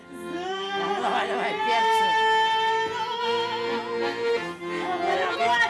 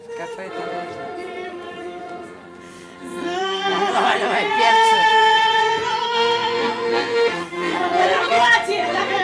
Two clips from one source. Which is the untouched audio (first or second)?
first